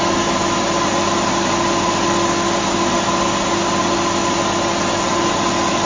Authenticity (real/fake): real